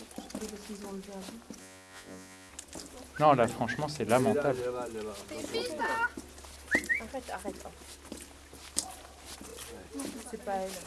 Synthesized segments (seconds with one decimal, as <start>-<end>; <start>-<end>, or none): 1.6-2.5